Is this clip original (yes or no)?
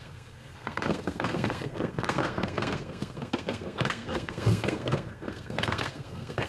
no